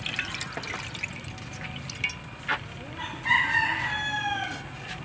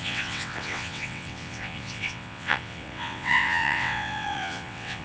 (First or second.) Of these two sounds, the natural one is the first